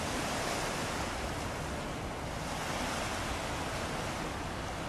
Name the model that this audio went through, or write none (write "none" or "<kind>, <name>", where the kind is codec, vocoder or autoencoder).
none